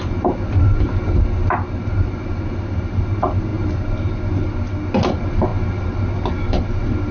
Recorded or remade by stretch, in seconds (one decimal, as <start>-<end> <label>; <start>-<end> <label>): 0.0-7.1 recorded

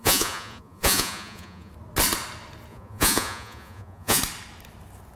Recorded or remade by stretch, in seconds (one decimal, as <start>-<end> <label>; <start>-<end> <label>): 0.0-1.7 remade; 1.7-2.7 recorded; 2.7-4.2 remade; 4.2-5.2 recorded

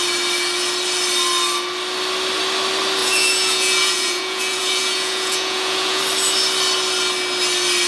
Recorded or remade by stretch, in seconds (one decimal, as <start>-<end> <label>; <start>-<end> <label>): 0.0-3.0 recorded; 3.0-6.0 remade; 6.0-7.9 recorded

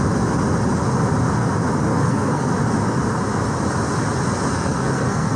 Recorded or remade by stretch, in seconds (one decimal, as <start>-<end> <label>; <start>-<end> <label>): 0.0-1.9 recorded; 1.9-2.5 remade; 2.5-4.5 recorded; 4.5-5.4 remade